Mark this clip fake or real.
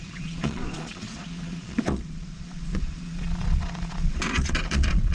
fake